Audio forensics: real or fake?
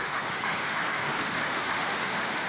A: fake